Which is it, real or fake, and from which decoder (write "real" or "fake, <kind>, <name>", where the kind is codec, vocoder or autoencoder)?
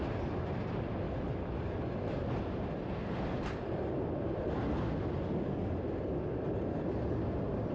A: real